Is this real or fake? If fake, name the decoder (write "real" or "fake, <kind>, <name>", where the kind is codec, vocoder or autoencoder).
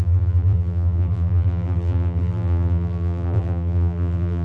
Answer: fake, vocoder, BigVGAN v2